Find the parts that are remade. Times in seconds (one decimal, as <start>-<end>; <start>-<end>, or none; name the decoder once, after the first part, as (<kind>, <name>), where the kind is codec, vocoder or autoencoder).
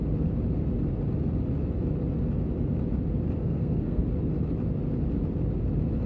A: 3.4-4.0 (codec, SNAC)